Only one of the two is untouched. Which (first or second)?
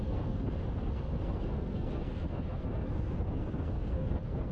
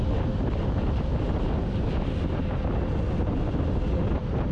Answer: second